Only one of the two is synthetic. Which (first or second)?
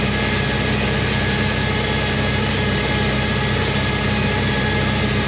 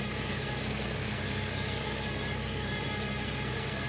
second